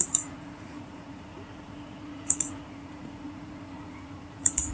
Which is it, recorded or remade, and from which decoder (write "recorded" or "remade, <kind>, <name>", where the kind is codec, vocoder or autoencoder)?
remade, vocoder, Vocos